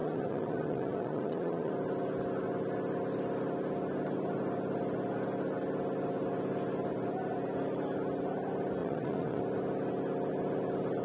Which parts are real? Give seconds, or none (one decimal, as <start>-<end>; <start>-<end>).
1.7-8.8; 9.4-11.0